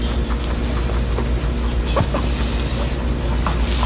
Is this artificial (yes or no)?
no